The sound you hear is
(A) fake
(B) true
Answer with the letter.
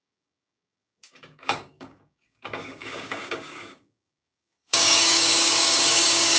A